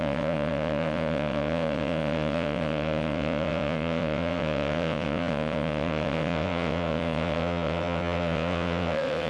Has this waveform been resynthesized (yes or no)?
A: yes